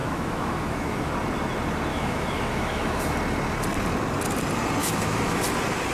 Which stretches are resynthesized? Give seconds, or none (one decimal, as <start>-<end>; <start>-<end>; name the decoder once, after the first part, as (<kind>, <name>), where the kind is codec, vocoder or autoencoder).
0.0-1.1 (autoencoder, DAC-VAE); 1.9-3.0; 4.8-5.4